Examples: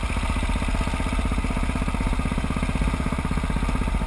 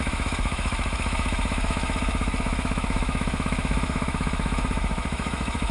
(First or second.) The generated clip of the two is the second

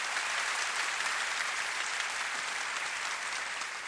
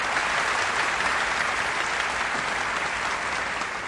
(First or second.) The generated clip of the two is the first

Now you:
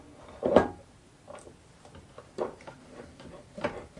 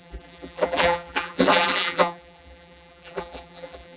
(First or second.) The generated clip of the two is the second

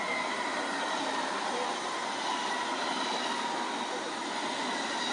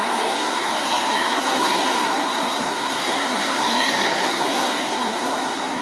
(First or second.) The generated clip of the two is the second